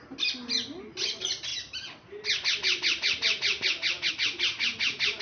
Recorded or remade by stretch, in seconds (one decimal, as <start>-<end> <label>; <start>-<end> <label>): 0.0-5.2 recorded